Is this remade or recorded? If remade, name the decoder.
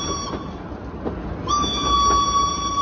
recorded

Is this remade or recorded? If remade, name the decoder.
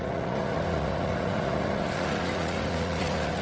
remade, vocoder, Vocos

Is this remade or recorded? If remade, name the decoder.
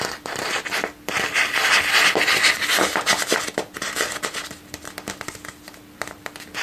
recorded